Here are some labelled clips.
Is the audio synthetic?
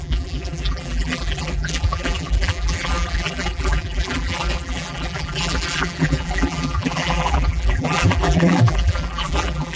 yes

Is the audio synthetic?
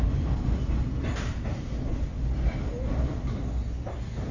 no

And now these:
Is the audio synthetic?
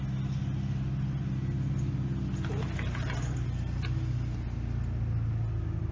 no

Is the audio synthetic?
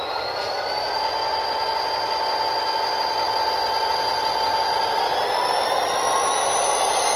no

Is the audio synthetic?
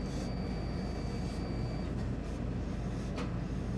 no